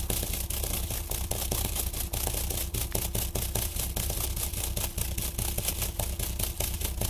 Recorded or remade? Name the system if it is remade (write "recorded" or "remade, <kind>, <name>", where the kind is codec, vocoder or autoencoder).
recorded